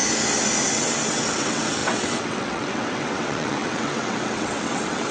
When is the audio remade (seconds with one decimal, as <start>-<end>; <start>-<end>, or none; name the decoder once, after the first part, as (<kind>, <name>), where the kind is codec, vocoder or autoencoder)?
0.7-5.1 (vocoder, WaveNeXt)